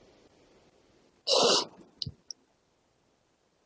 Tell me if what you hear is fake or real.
real